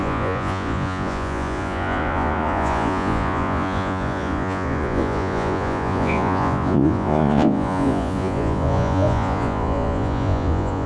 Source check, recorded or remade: remade